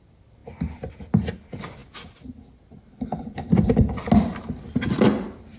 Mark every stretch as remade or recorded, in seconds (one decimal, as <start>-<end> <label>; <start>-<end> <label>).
0.0-5.6 recorded